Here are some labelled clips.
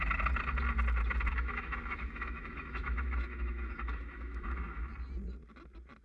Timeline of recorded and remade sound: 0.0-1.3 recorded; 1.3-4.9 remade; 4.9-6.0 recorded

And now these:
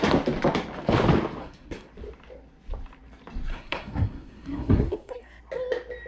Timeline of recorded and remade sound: 0.0-1.4 recorded; 1.4-1.9 remade; 1.9-3.5 recorded; 3.5-5.4 remade; 5.4-6.1 recorded